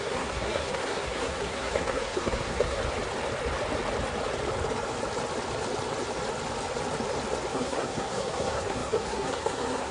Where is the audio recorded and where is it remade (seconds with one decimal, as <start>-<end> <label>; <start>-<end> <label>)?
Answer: 0.0-2.8 remade; 2.8-7.5 recorded; 7.5-9.9 remade